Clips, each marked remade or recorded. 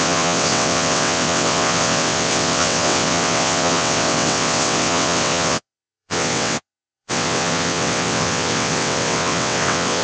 remade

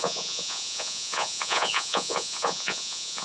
remade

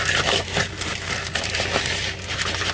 recorded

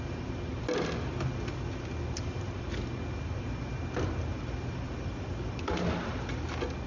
recorded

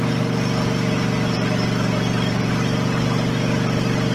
recorded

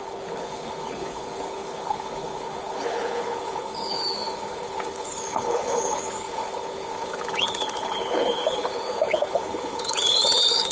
remade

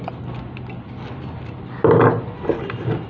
recorded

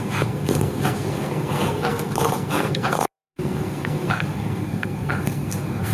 remade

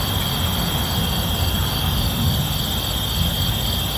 recorded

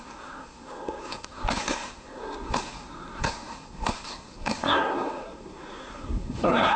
remade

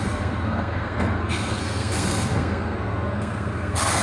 remade